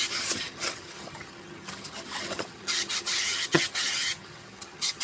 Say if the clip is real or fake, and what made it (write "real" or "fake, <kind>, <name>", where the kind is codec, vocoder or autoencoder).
fake, vocoder, HiFi-GAN